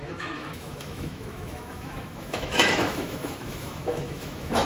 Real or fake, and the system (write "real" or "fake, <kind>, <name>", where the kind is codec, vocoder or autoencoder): fake, autoencoder, DAC-VAE